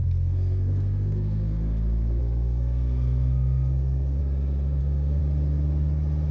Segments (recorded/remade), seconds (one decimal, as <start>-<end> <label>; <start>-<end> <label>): 0.0-4.2 remade; 4.2-4.8 recorded; 4.8-5.2 remade; 5.2-6.3 recorded

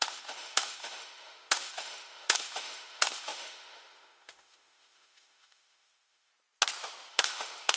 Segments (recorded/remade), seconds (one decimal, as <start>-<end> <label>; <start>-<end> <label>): 0.0-6.3 remade; 6.3-7.1 recorded; 7.1-7.8 remade

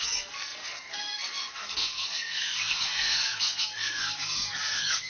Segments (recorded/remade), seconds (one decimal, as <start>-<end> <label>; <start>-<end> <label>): 0.0-5.1 remade

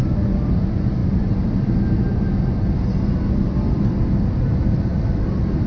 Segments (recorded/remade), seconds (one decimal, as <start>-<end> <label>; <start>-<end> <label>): 0.0-5.7 recorded

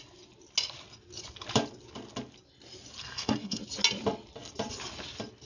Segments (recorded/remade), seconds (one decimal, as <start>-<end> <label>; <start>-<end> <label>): 0.0-3.0 recorded; 3.0-3.6 remade; 3.6-5.4 recorded